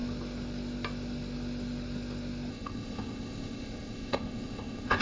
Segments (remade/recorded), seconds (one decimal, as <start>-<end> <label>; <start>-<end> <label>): 0.0-2.5 recorded; 2.5-5.0 remade